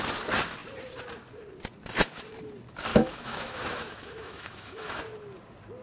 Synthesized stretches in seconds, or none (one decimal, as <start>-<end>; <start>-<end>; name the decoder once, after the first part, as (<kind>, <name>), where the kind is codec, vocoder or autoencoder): 2.9-5.0 (autoencoder, DAC-VAE)